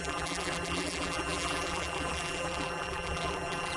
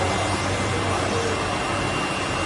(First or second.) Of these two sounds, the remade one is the first